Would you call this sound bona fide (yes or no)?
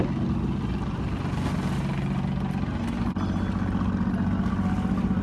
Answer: yes